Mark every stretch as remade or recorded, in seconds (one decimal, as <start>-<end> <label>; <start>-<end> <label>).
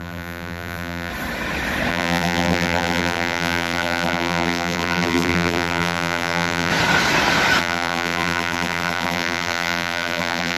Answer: 0.0-1.1 remade; 1.1-1.9 recorded; 1.9-6.7 remade; 6.7-7.6 recorded; 7.6-10.6 remade